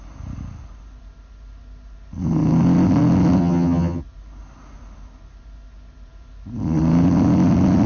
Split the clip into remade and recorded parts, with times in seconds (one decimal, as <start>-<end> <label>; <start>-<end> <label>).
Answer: 0.0-3.4 recorded; 3.4-4.0 remade; 4.0-7.9 recorded